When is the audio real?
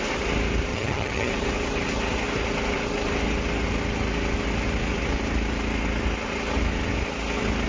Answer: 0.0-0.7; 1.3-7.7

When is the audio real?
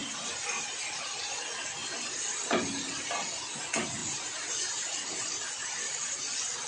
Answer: 0.0-4.0; 5.7-6.7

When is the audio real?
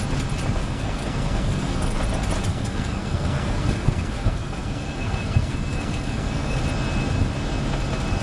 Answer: 0.0-0.6; 2.0-2.5; 6.6-8.2